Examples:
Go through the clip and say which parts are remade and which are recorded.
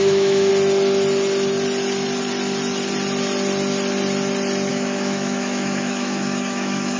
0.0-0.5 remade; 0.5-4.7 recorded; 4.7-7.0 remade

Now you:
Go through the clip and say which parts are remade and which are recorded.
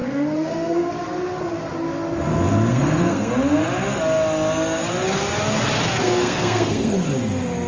0.0-0.9 remade; 0.9-2.7 recorded; 2.7-3.3 remade; 3.3-6.0 recorded; 6.0-6.9 remade; 6.9-7.7 recorded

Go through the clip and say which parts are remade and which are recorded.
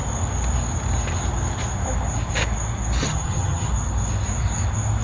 0.0-3.0 recorded; 3.0-3.7 remade; 3.7-5.0 recorded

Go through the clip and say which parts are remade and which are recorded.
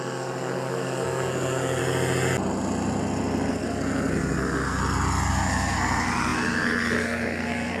0.0-1.8 remade; 1.8-3.5 recorded; 3.5-4.8 remade; 4.8-5.3 recorded; 5.3-7.8 remade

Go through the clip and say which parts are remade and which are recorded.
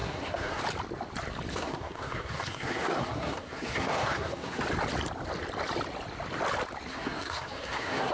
0.0-0.6 remade; 0.6-1.5 recorded; 1.5-4.6 remade; 4.6-6.9 recorded; 6.9-8.1 remade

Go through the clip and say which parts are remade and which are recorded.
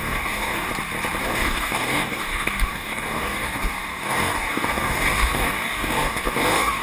0.0-0.7 remade; 0.7-1.2 recorded; 1.2-6.8 remade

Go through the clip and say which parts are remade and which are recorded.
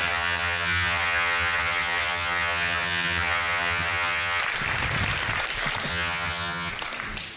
0.0-4.4 remade; 4.4-5.9 recorded; 5.9-6.7 remade; 6.7-7.4 recorded